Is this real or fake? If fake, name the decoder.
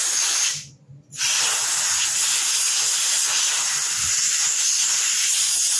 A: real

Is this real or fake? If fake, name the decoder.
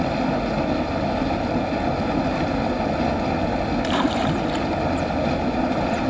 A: real